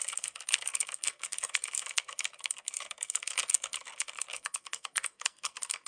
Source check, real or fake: fake